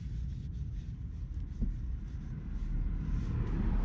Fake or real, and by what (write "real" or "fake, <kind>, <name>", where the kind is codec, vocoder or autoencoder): real